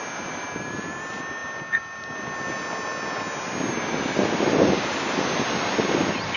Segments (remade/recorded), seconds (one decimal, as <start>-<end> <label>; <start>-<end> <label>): 0.0-6.4 recorded